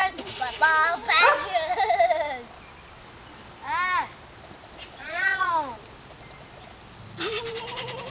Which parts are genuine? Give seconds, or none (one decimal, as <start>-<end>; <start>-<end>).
0.0-5.0; 5.5-8.1